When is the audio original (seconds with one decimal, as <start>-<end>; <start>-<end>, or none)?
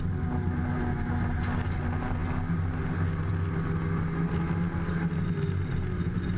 0.0-6.4